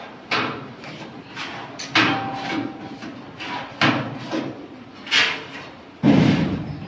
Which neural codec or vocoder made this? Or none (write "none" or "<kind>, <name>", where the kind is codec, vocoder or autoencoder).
none